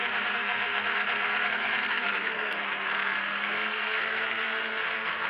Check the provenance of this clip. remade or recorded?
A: remade